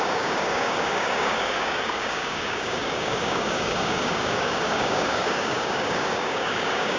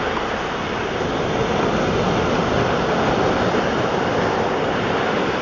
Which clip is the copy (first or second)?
first